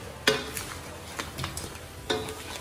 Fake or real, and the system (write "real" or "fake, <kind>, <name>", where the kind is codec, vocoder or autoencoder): real